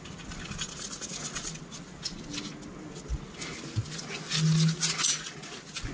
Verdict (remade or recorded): recorded